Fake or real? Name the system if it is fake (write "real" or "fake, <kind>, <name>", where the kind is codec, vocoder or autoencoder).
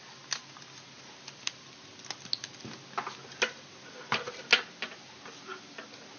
real